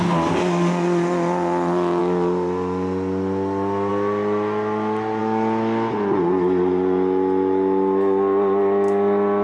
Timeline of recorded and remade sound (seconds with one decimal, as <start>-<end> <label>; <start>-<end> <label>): 0.0-9.4 recorded